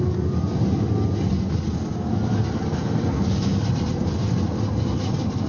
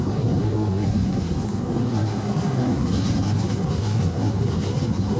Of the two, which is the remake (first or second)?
second